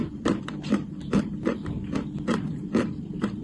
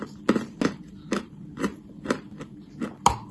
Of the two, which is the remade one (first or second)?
first